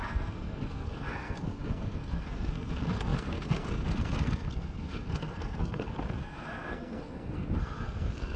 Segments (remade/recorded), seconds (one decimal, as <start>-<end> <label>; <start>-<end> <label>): 0.0-8.4 remade